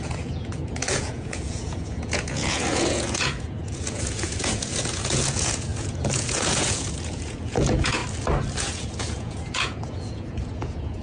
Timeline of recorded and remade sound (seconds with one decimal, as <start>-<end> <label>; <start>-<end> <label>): 0.0-8.0 remade; 8.0-8.6 recorded; 8.6-11.0 remade